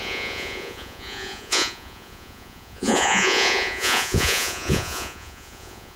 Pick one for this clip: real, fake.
fake